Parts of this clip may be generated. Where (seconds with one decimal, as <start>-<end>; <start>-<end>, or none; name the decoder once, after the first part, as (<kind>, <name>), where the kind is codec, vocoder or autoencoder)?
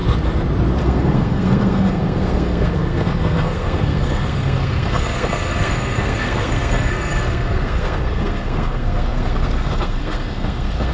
0.8-10.9 (codec, SNAC)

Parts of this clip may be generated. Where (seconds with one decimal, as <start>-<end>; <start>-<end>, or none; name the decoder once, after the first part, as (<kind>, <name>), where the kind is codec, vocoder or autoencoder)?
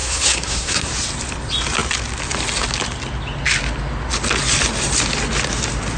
0.0-0.9 (codec, SNAC)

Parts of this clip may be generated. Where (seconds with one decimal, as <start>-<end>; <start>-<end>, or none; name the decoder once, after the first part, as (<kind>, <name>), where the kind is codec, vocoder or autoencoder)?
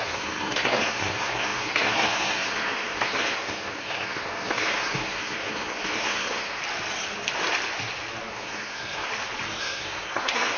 0.0-6.6 (codec, SNAC); 8.3-9.1; 9.6-10.6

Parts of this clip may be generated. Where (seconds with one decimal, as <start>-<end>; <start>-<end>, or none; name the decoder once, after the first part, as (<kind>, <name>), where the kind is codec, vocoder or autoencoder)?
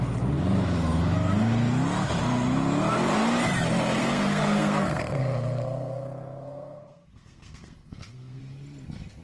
4.0-8.4 (codec, SNAC)